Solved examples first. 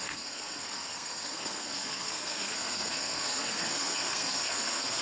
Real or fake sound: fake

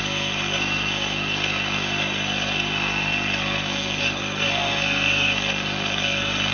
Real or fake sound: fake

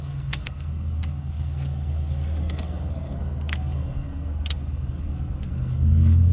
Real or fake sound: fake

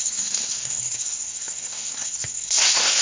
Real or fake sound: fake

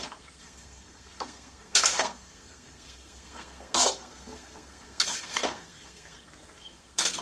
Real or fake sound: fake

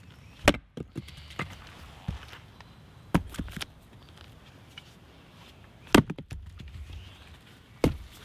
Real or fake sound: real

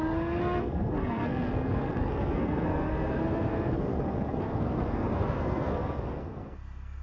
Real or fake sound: fake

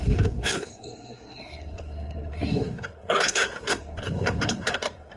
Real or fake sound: fake